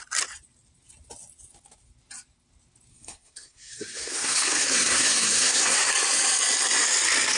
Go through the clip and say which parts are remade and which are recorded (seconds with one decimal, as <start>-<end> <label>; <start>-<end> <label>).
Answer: 0.0-2.9 recorded; 2.9-5.9 remade; 5.9-7.4 recorded